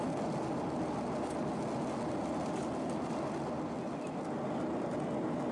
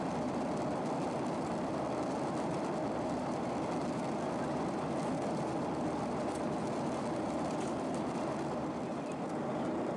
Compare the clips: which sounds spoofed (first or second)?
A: second